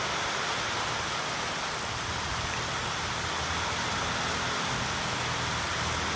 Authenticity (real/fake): real